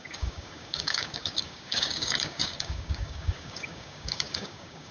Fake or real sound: fake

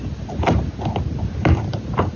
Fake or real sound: real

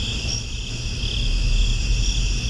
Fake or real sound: real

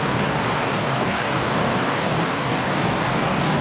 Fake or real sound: fake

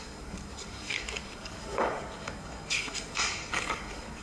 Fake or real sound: fake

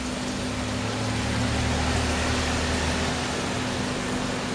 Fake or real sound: real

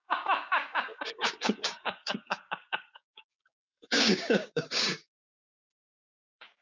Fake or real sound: fake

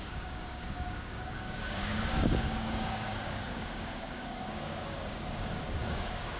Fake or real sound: fake